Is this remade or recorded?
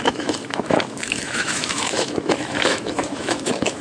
remade